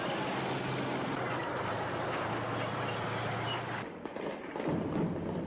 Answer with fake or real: real